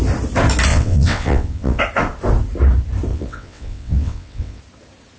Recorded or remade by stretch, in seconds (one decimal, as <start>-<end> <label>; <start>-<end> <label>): 0.0-0.7 recorded; 0.7-1.8 remade; 1.8-3.1 recorded; 3.1-4.6 remade; 4.6-5.2 recorded